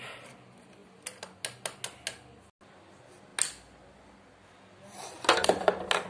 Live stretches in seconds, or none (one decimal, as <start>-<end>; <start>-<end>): 0.0-6.1